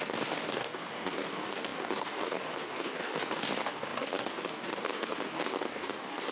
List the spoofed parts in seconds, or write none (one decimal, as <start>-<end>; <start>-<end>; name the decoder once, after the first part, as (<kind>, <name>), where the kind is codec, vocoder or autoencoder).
0.0-6.3 (codec, DAC)